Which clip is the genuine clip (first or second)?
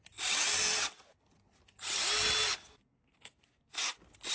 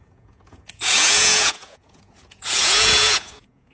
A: first